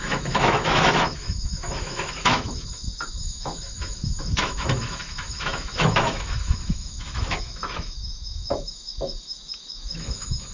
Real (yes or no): no